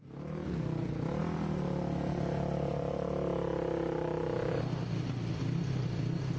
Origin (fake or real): real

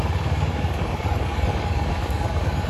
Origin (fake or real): fake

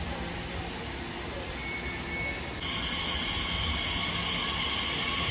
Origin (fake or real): real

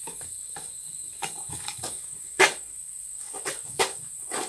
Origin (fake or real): fake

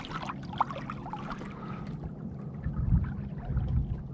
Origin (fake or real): real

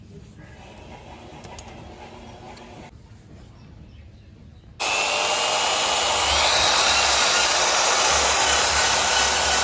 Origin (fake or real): real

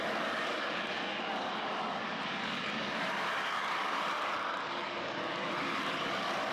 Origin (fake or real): fake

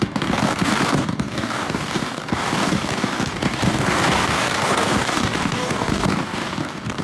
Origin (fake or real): fake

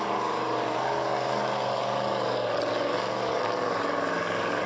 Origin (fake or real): fake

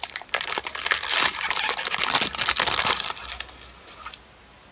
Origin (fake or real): real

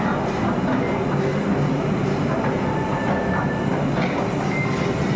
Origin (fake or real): real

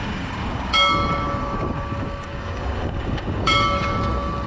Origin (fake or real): fake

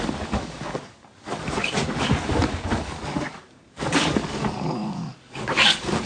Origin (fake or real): fake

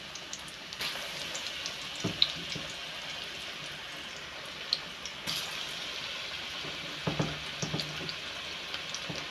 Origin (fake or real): real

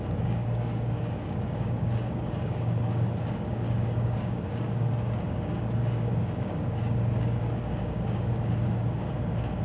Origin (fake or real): fake